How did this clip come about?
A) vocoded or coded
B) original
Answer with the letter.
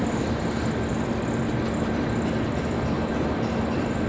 B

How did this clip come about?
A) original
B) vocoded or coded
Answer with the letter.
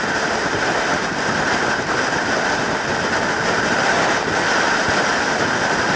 A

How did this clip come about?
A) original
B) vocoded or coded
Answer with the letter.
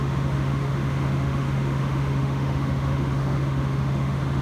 B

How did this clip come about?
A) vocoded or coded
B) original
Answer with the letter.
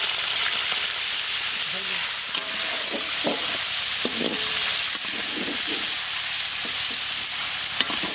A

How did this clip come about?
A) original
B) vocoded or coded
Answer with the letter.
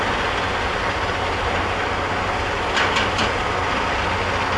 A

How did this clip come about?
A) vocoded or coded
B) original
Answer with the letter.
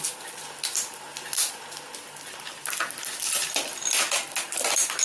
B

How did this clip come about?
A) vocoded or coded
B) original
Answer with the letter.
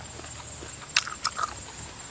B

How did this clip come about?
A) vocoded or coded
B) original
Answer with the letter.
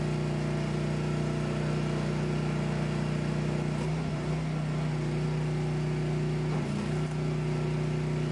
B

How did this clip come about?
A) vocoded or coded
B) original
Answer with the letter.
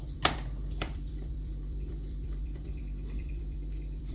A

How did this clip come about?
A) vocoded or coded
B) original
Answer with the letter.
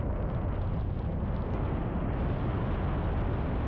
B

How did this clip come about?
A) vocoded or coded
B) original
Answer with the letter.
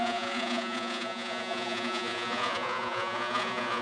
A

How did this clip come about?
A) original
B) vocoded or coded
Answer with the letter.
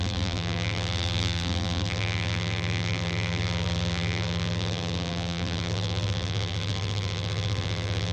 B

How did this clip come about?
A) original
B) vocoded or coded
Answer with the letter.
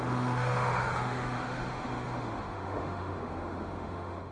B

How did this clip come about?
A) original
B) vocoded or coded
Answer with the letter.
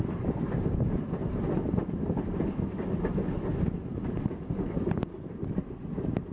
A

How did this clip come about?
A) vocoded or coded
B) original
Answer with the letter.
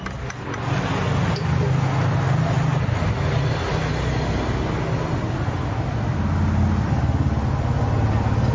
B